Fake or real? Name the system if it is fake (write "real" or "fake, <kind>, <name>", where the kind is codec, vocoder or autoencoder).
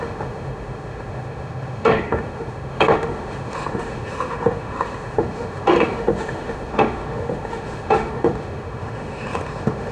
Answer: fake, autoencoder, DAC-VAE